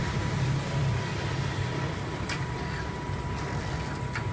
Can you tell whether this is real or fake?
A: fake